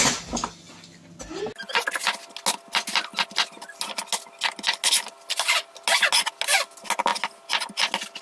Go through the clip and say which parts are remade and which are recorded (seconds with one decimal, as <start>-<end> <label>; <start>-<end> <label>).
0.0-8.2 recorded